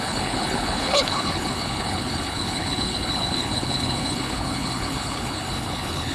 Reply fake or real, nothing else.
fake